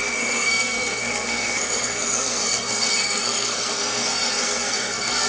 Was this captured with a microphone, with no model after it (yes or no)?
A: no